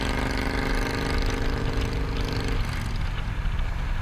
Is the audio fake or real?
real